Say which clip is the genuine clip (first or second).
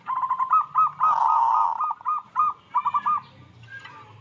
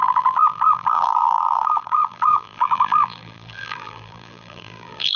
first